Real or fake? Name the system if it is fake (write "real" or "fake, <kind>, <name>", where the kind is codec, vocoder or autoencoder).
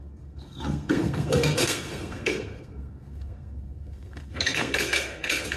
fake, codec, SNAC